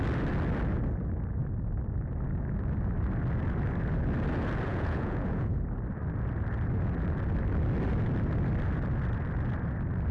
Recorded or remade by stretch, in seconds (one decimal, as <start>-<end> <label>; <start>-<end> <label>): 0.0-4.7 recorded; 4.7-5.5 remade; 5.5-10.1 recorded